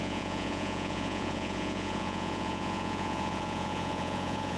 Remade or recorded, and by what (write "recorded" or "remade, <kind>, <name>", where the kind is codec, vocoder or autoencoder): remade, vocoder, Vocos